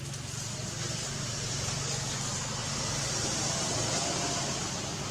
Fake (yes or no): no